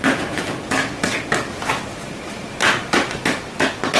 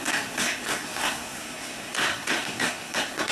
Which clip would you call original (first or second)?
first